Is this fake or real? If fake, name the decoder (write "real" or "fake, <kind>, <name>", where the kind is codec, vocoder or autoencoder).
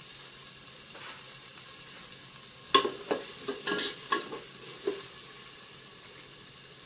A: real